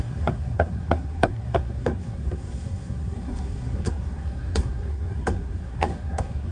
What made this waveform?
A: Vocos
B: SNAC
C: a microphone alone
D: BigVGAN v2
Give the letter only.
B